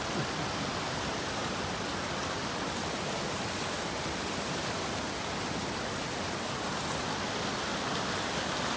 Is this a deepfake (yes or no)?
no